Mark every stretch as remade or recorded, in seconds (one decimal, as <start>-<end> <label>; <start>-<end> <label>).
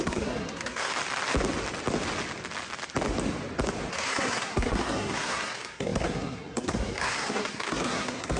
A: 0.0-0.9 remade; 0.9-3.9 recorded; 3.9-8.4 remade